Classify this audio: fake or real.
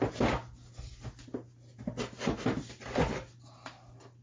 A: real